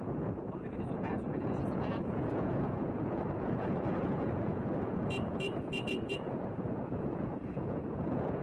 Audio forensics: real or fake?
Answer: fake